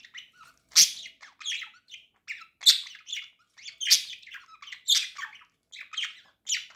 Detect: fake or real real